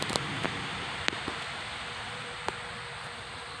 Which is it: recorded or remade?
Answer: recorded